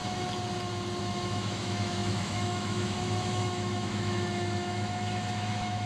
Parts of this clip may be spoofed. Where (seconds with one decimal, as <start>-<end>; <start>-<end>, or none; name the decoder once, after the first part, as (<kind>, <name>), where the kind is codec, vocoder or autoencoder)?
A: 1.0-5.9 (autoencoder, DAC-VAE)